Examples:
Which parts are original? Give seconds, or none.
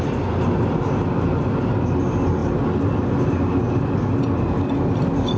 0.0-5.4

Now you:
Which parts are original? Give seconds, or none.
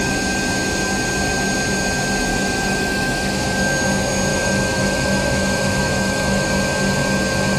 0.0-2.3; 3.3-4.3; 6.5-7.6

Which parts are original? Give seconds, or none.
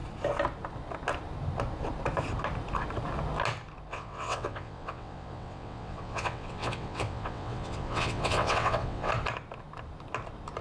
0.0-3.9; 9.1-10.6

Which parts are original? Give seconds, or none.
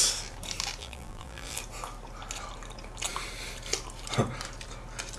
0.0-0.8; 1.6-5.2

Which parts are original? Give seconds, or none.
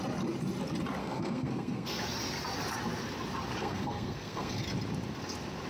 0.0-1.0; 2.0-3.6; 4.6-5.7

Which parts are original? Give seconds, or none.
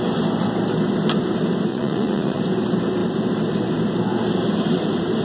0.0-1.7; 2.4-5.2